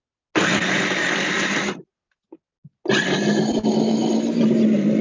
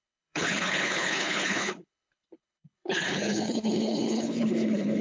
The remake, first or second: second